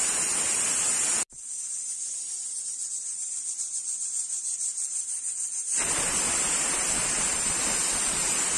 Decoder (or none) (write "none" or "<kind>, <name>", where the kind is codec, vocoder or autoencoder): none